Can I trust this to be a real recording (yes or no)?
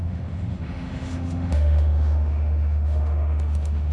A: no